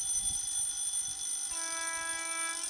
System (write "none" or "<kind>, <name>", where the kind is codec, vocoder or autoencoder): none